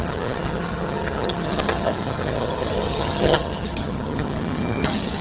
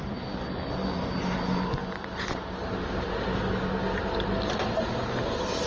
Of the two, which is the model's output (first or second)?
first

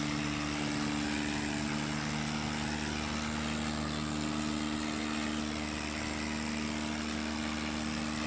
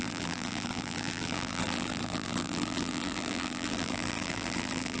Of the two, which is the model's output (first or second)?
second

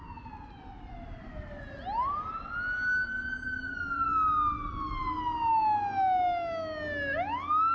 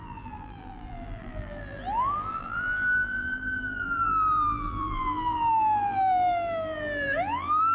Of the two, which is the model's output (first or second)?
second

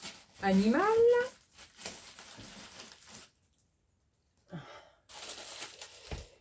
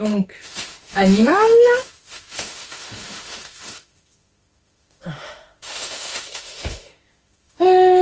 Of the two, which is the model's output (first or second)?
second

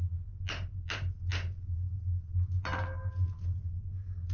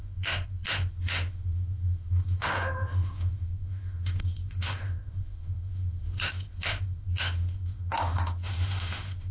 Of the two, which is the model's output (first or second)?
second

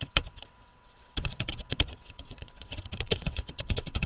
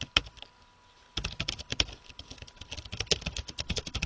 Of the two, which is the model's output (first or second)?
first